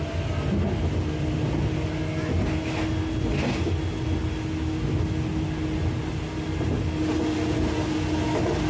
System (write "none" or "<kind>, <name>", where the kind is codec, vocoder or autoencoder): none